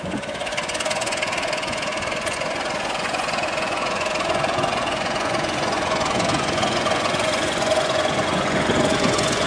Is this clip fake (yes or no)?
yes